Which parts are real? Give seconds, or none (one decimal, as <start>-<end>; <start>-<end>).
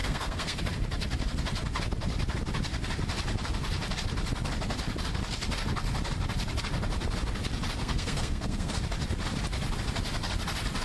0.6-7.8; 8.7-10.8